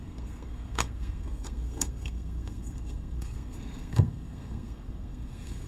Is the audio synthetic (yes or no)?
yes